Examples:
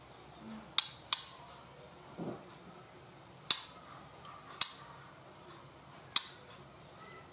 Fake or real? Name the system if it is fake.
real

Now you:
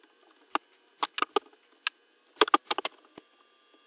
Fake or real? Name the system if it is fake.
real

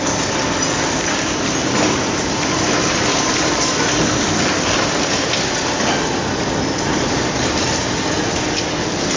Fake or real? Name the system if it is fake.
real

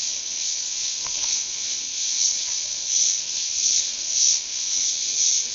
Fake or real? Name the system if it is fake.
fake, codec, SNAC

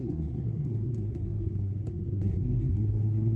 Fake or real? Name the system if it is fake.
fake, codec, SNAC